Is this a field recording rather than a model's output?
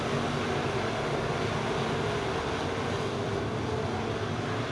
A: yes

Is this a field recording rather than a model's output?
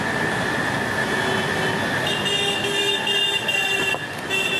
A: yes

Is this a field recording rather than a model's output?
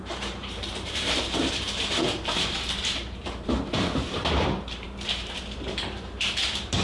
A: no